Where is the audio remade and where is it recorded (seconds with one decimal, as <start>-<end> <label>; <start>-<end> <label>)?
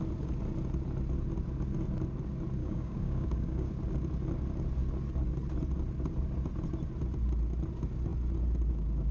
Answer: 0.0-2.6 recorded; 2.6-3.7 remade; 3.7-9.1 recorded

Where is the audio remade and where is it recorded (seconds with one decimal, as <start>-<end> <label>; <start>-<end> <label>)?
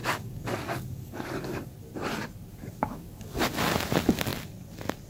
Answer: 0.0-1.7 remade; 1.7-2.5 recorded; 2.5-3.4 remade; 3.4-5.1 recorded